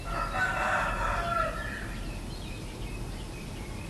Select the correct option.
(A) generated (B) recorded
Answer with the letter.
B